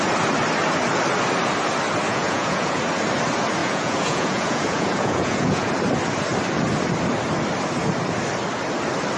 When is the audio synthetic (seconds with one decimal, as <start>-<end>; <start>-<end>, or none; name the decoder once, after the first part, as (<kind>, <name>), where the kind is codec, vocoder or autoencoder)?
2.1-2.8 (vocoder, Vocos); 3.6-5.7